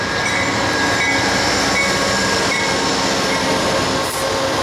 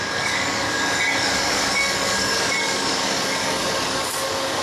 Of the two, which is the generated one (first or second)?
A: second